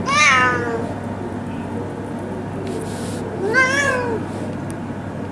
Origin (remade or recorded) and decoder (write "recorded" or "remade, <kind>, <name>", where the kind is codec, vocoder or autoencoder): recorded